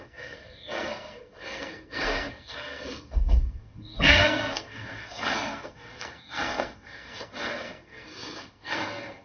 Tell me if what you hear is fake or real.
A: fake